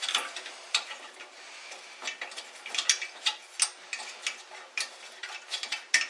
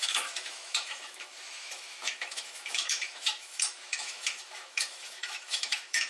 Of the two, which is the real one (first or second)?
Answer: first